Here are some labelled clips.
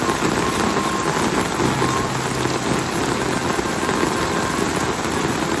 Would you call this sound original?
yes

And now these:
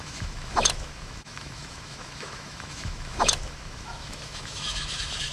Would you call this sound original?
no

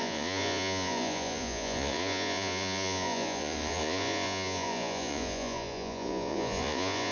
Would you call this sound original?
no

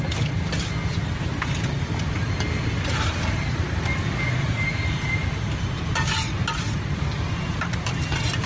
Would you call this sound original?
yes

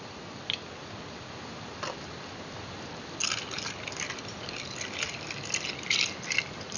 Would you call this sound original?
yes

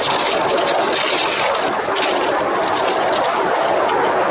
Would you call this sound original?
yes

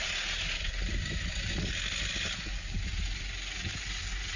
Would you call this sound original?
yes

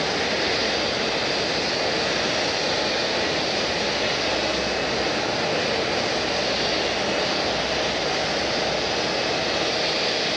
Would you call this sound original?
yes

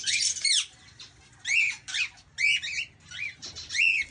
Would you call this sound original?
yes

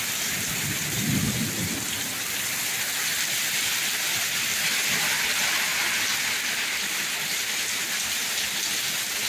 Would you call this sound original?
yes